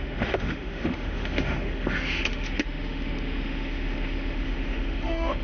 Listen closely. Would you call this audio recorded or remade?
remade